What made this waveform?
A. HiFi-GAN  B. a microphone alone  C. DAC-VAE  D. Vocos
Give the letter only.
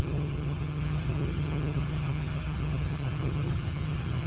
A